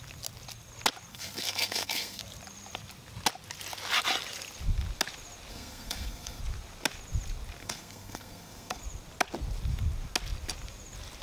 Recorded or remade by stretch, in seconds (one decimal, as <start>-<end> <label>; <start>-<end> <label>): 0.0-1.1 recorded; 1.1-2.2 remade; 2.2-5.5 recorded; 5.5-6.4 remade; 6.4-7.6 recorded; 7.6-8.8 remade; 8.8-11.2 recorded